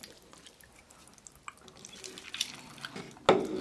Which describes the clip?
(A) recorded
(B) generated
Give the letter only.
A